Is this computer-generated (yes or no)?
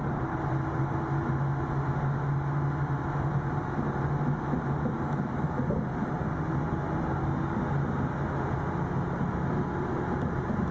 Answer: no